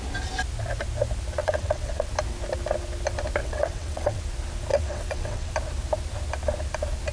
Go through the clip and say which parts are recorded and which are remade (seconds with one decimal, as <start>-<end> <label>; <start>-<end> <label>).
0.0-1.4 recorded; 1.4-2.1 remade; 2.1-3.4 recorded; 3.4-4.2 remade; 4.2-4.7 recorded; 4.7-5.5 remade; 5.5-7.1 recorded